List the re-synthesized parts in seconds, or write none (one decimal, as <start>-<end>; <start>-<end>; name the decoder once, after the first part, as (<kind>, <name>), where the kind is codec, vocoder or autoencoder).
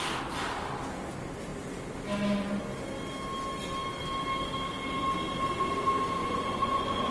6.2-7.1 (vocoder, Vocos)